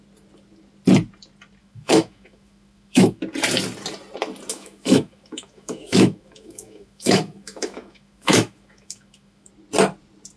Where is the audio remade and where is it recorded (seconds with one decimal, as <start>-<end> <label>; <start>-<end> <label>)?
0.0-1.6 recorded; 1.6-3.2 remade; 3.2-4.5 recorded; 4.5-9.5 remade; 9.5-10.4 recorded